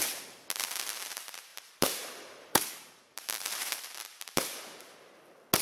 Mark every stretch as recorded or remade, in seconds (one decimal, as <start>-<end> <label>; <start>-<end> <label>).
0.0-1.5 recorded; 1.5-4.8 remade; 4.8-5.6 recorded